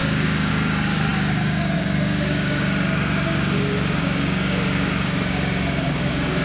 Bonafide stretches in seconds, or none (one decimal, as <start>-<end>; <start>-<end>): none